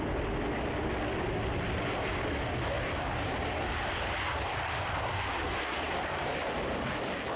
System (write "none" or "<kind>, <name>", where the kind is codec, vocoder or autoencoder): none